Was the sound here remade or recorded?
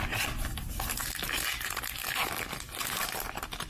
recorded